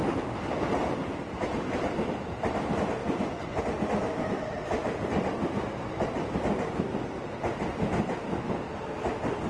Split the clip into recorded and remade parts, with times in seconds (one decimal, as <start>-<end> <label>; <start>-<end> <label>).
0.0-3.0 recorded; 3.0-3.6 remade; 3.6-9.5 recorded